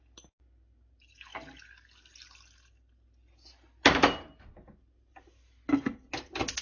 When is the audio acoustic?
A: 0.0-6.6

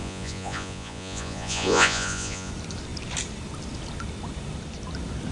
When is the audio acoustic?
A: 2.5-5.3

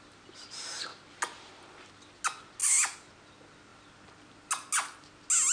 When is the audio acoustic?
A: 0.0-5.5